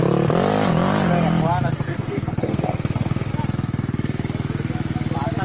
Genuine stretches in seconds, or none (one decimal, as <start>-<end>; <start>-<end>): 0.0-1.9; 3.3-5.4